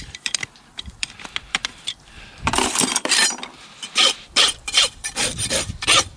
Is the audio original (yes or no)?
no